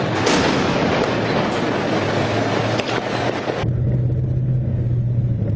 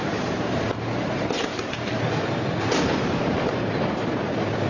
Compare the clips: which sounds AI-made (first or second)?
second